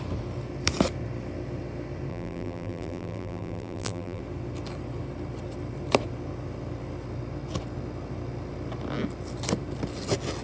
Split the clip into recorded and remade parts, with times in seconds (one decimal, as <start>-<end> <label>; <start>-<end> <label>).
0.0-2.1 recorded; 2.1-4.2 remade; 4.2-10.4 recorded